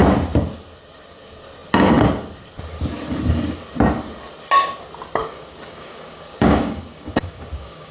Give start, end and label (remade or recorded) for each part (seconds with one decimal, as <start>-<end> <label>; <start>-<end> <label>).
0.0-5.2 recorded; 5.2-7.9 remade